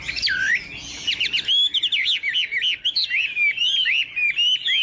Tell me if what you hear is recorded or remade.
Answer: recorded